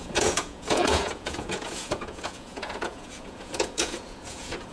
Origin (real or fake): fake